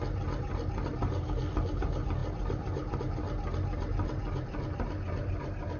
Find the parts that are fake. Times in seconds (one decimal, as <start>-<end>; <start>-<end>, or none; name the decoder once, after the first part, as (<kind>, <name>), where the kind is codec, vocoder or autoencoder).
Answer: none